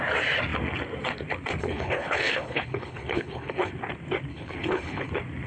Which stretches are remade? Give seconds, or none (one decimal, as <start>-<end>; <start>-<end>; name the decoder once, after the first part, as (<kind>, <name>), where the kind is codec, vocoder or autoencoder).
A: 1.6-3.7 (codec, HILCodec); 4.3-5.1